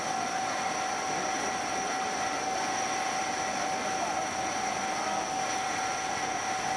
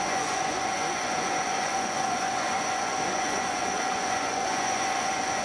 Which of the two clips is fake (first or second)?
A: second